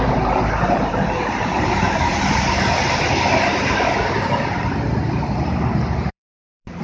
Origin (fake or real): fake